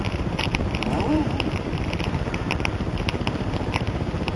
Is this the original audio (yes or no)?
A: no